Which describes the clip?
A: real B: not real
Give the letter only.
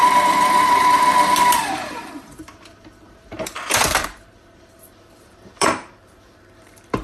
B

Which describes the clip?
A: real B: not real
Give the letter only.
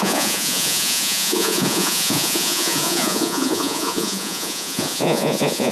B